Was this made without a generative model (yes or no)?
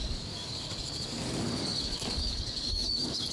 no